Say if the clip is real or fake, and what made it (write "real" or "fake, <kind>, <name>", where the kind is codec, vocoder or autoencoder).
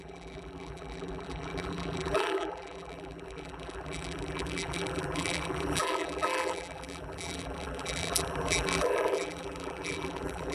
fake, vocoder, BigVGAN v2